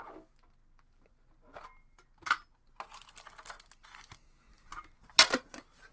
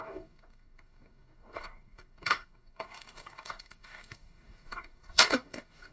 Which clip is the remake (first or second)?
second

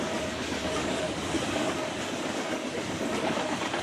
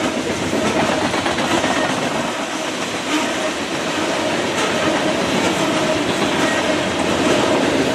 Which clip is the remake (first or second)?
first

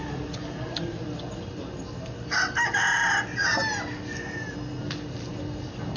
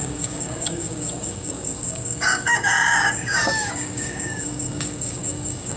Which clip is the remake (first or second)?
second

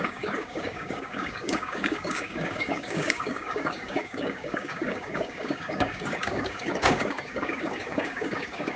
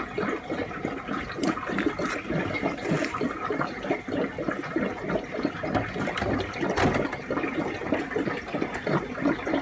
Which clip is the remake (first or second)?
first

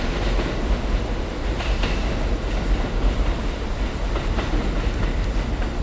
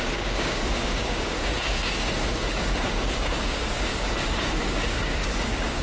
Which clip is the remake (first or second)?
second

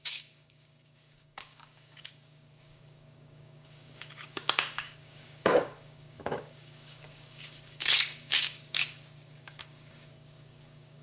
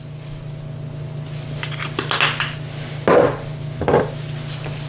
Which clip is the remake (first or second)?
first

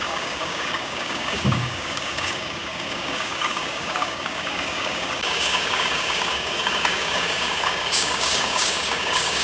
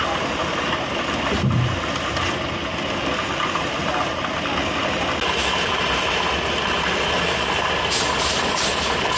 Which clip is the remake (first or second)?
first